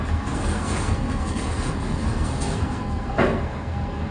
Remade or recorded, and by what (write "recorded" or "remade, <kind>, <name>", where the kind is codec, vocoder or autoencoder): remade, codec, SNAC